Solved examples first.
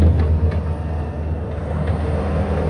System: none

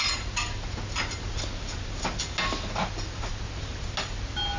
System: none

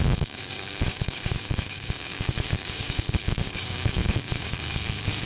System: codec, DAC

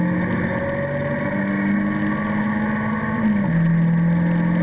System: none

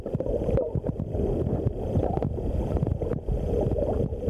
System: none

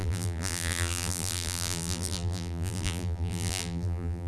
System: vocoder, BigVGAN v2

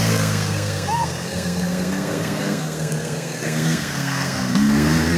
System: codec, SNAC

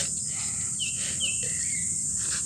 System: none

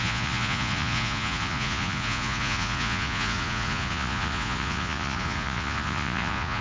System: vocoder, Vocos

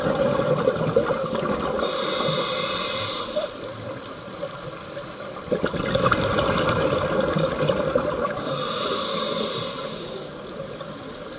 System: none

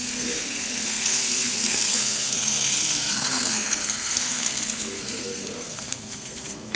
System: codec, SNAC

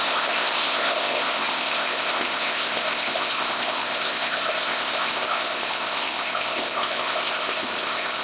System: codec, ZipCodec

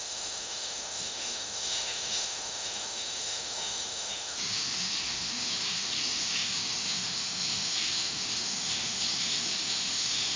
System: autoencoder, DAC-VAE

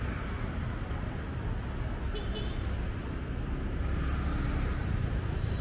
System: none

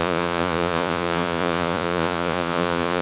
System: vocoder, Vocos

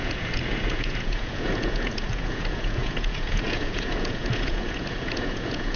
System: vocoder, Vocos